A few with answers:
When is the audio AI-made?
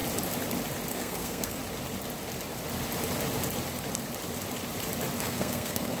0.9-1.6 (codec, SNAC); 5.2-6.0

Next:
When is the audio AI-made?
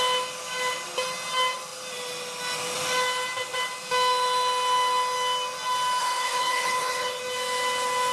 6.0-7.2 (codec, HILCodec)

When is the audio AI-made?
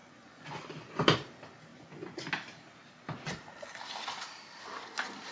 0.0-0.6 (vocoder, Vocos); 1.7-2.3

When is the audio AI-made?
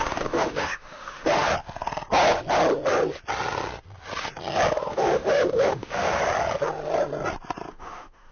0.0-1.5 (autoencoder, DAC-VAE); 4.9-6.2; 7.7-8.3